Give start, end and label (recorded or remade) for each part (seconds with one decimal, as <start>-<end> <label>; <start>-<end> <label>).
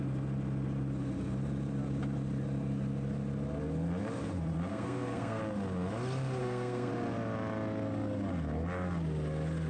0.0-4.7 recorded; 4.7-5.4 remade; 5.4-6.4 recorded; 6.4-6.9 remade; 6.9-9.7 recorded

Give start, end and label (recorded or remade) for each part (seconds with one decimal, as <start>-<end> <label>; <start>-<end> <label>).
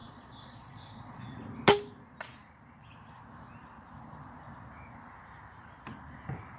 0.0-1.2 remade; 1.2-6.6 recorded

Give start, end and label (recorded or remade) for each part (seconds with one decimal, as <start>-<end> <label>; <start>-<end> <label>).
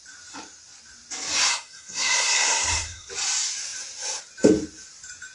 0.0-1.5 recorded; 1.5-3.1 remade; 3.1-5.3 recorded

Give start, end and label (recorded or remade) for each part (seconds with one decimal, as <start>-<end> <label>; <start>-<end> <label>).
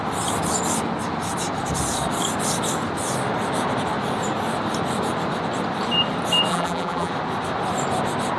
0.0-6.5 recorded; 6.5-7.1 remade; 7.1-8.4 recorded